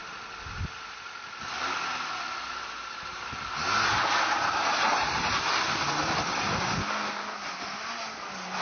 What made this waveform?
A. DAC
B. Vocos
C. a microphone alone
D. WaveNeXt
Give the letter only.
C